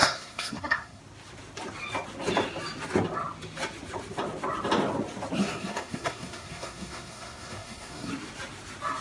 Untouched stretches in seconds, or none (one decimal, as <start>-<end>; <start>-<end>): 1.0-5.4; 8.1-9.0